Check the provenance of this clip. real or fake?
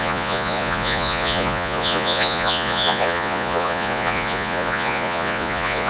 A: fake